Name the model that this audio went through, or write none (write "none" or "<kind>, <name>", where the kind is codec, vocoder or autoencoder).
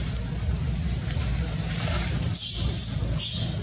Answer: none